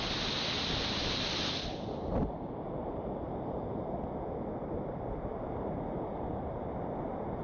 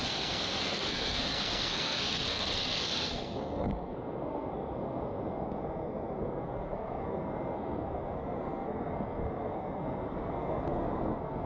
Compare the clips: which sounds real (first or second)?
first